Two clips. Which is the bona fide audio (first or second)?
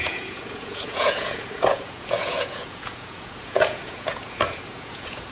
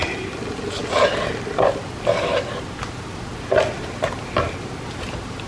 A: second